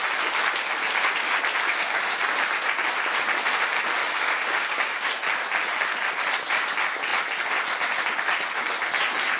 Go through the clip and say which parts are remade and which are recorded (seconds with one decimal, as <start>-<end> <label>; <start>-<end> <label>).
0.0-1.7 recorded; 1.7-2.2 remade; 2.2-4.0 recorded; 4.0-5.1 remade; 5.1-9.4 recorded